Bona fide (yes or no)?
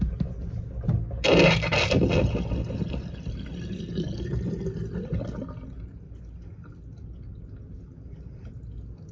yes